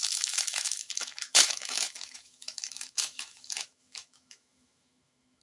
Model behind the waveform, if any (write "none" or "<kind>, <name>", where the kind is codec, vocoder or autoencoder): autoencoder, DAC-VAE